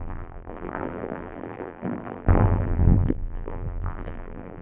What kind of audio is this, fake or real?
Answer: fake